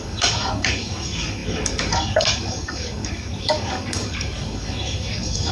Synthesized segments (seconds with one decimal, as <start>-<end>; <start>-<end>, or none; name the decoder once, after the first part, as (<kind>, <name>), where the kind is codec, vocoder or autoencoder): 0.0-5.5 (codec, DAC)